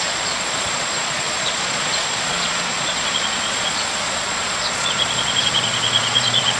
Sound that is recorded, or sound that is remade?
remade